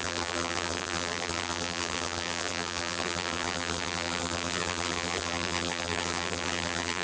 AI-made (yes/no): yes